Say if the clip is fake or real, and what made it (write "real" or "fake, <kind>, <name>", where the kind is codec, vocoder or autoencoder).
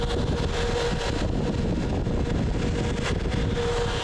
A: real